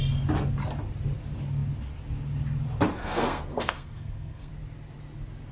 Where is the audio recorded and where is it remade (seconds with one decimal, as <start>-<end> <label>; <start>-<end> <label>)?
0.0-3.0 recorded; 3.0-4.5 remade; 4.5-5.5 recorded

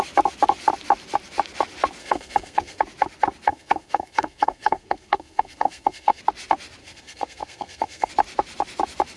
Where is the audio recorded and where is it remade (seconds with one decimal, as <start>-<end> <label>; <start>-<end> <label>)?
0.0-2.0 recorded; 2.0-2.8 remade; 2.8-3.5 recorded; 3.5-6.2 remade; 6.2-6.8 recorded; 6.8-8.1 remade; 8.1-9.2 recorded

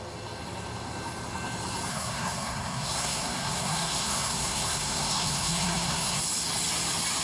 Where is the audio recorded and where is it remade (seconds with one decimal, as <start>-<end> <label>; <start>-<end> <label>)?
0.0-1.9 recorded; 1.9-6.2 remade; 6.2-7.2 recorded

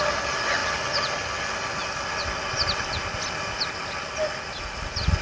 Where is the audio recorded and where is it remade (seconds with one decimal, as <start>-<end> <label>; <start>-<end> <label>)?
0.0-5.2 recorded

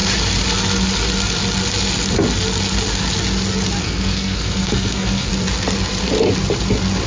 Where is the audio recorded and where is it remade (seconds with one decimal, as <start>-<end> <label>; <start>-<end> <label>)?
0.0-3.8 recorded; 3.8-5.3 remade; 5.3-7.1 recorded

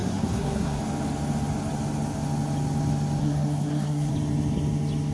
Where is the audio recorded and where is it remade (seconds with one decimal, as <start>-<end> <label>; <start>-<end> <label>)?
0.0-0.8 remade; 0.8-3.2 recorded; 3.2-4.1 remade; 4.1-5.1 recorded

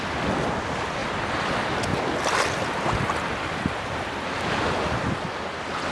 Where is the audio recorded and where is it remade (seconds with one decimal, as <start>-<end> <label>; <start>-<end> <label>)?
0.0-5.9 recorded

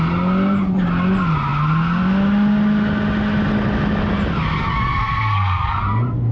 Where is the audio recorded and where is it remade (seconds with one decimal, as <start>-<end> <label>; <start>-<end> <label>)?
0.0-4.9 recorded; 4.9-5.8 remade; 5.8-6.3 recorded